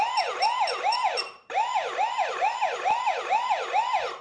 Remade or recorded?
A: remade